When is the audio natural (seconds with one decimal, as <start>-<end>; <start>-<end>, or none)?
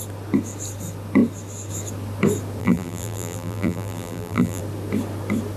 0.0-2.6; 4.6-5.6